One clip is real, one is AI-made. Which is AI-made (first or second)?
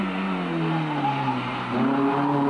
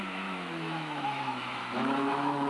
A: second